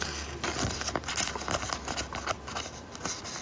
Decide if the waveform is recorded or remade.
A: recorded